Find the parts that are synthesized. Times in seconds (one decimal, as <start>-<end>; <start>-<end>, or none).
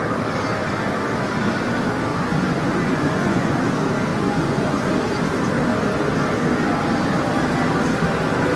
2.1-3.6; 4.1-4.9